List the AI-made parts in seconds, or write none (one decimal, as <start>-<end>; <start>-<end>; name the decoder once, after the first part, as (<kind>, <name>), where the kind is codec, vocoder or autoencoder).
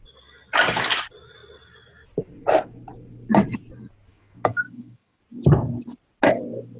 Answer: 4.1-5.2 (autoencoder, DAC-VAE)